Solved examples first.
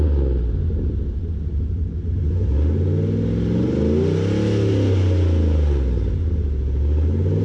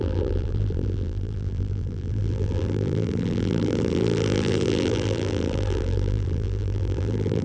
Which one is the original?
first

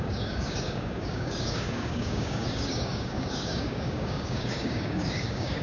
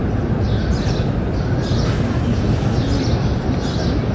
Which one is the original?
second